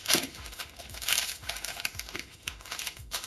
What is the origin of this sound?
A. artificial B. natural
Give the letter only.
A